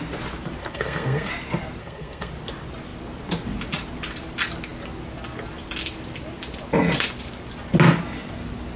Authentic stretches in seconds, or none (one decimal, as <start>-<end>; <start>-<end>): 0.0-0.6; 1.3-1.8; 2.3-8.8